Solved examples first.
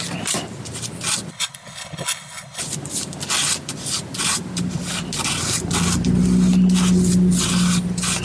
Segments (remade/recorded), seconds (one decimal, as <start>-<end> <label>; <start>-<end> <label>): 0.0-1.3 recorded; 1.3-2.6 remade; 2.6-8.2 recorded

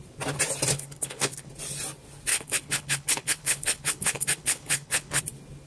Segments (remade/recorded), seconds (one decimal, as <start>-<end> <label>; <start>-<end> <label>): 0.0-0.7 recorded; 0.7-1.5 remade; 1.5-2.3 recorded; 2.3-5.2 remade; 5.2-5.7 recorded

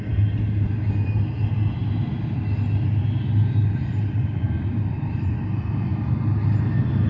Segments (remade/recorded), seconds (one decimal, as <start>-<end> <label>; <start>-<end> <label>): 0.0-7.1 recorded

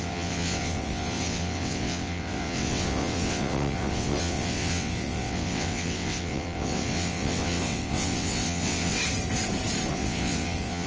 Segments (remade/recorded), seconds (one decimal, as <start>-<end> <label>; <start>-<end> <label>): 0.0-9.0 remade; 9.0-9.9 recorded; 9.9-10.9 remade

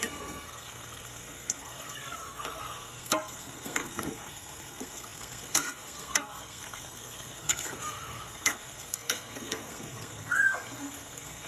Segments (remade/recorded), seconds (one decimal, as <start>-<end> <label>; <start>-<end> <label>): 0.0-11.5 remade

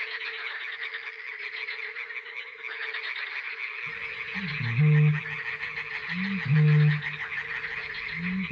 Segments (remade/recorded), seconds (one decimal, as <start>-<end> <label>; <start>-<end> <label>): 0.0-8.5 recorded

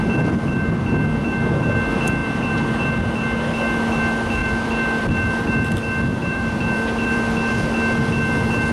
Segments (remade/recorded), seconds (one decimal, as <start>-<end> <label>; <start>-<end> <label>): 0.0-2.2 recorded; 2.2-2.8 remade; 2.8-4.4 recorded; 4.4-5.5 remade; 5.5-6.2 recorded; 6.2-7.5 remade; 7.5-8.7 recorded

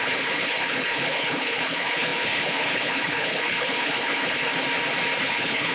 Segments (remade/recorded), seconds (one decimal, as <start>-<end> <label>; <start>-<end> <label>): 0.0-4.5 remade; 4.5-5.2 recorded; 5.2-5.7 remade